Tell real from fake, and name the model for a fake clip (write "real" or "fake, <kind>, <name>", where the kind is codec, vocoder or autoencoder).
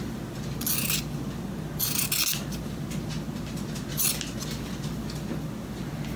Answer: real